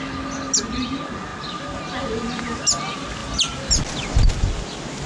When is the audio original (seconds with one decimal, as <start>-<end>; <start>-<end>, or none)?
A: 0.0-5.1